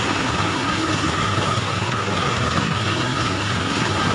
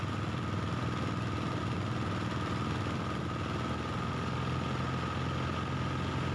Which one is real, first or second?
second